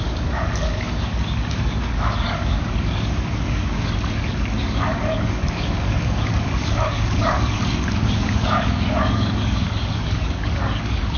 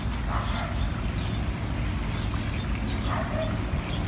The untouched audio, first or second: second